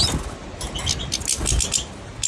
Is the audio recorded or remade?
recorded